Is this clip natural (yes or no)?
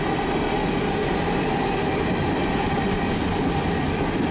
yes